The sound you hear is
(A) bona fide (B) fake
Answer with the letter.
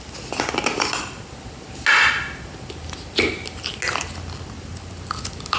A